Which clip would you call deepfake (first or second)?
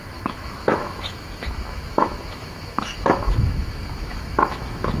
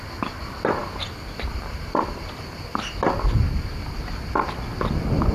first